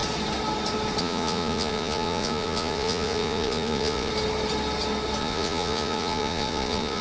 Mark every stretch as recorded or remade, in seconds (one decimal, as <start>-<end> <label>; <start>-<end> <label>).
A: 0.0-1.0 recorded; 1.0-4.1 remade; 4.1-5.2 recorded; 5.2-7.0 remade

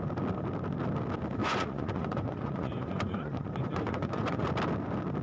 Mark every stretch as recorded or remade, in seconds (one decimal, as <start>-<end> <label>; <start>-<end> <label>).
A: 0.0-1.4 recorded; 1.4-4.5 remade; 4.5-5.2 recorded